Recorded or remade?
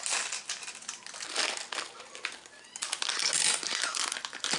recorded